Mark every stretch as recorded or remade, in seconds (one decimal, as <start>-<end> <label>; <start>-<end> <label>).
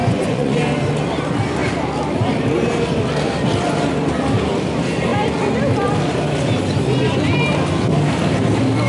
0.0-0.6 remade; 0.6-8.9 recorded